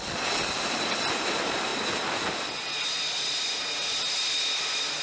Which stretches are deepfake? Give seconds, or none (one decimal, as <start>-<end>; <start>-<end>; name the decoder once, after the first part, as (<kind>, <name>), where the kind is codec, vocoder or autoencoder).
none